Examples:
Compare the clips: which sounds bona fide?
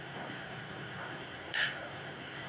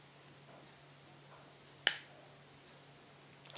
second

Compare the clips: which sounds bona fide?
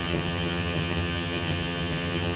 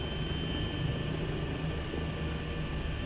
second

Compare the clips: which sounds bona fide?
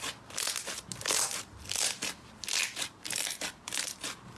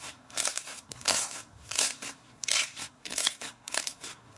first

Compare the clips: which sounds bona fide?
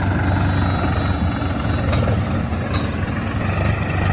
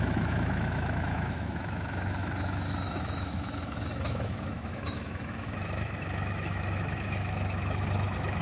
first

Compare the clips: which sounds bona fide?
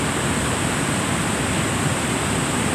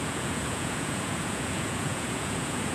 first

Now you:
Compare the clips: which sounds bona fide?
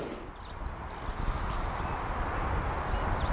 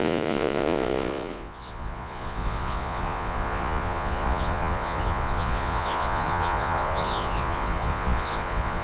first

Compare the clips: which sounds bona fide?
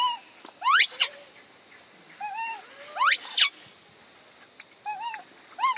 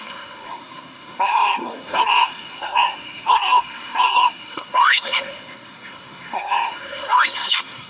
first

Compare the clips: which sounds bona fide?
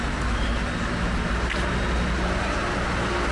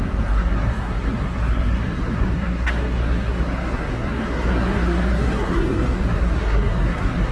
first